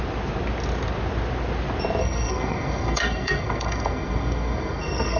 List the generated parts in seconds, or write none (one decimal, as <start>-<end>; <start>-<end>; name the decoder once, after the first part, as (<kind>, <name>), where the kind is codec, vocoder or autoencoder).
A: 2.0-5.2 (codec, SNAC)